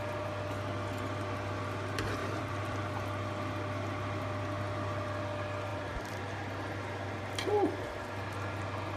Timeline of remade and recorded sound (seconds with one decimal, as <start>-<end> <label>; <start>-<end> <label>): 0.0-2.2 recorded; 2.2-2.9 remade; 2.9-5.7 recorded; 5.7-6.2 remade; 6.2-9.0 recorded